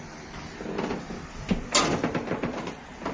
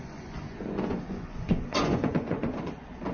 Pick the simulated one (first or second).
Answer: second